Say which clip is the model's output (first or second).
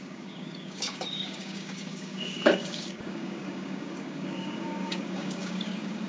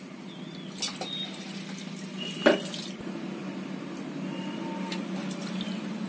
first